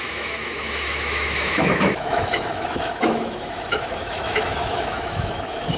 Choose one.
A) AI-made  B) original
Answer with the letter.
A